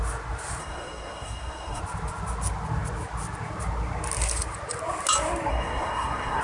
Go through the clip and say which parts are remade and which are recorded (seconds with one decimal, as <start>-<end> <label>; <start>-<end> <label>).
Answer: 0.0-0.6 recorded; 0.6-1.8 remade; 1.8-5.5 recorded; 5.5-6.4 remade